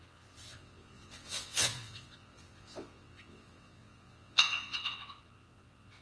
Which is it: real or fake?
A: fake